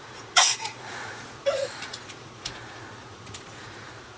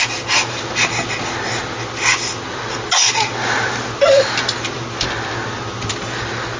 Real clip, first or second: second